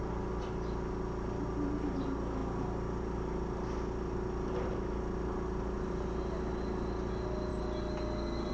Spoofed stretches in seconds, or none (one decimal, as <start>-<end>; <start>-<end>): none